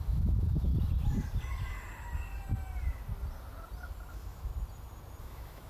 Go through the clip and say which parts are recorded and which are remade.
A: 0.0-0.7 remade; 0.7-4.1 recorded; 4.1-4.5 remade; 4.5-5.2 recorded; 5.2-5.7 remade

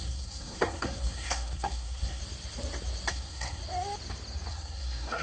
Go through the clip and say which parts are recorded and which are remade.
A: 0.0-2.2 remade; 2.2-3.1 recorded; 3.1-3.6 remade; 3.6-4.5 recorded; 4.5-5.2 remade